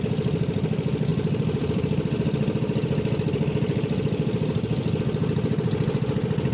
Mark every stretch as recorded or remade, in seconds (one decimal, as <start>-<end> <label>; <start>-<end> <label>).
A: 0.0-1.1 recorded; 1.1-5.0 remade; 5.0-6.5 recorded